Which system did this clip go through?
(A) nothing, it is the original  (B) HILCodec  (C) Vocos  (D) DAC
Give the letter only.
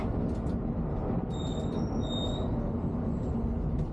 A